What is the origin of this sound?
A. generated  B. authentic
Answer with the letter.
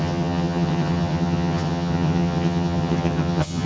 A